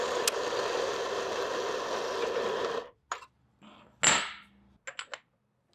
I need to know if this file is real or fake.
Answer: real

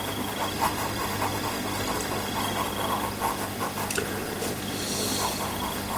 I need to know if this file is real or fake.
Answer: real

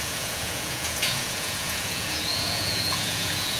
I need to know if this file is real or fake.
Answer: fake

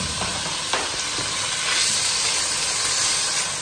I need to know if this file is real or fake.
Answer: real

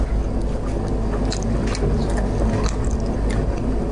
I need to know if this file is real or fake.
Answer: real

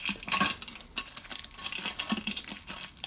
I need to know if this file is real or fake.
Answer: real